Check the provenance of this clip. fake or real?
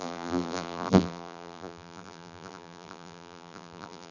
fake